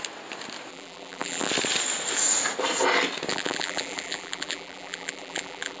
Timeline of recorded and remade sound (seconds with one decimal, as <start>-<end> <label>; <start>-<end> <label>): 0.0-0.7 recorded; 0.7-1.5 remade; 1.5-3.3 recorded; 3.3-5.8 remade